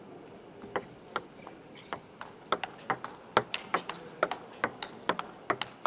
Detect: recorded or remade recorded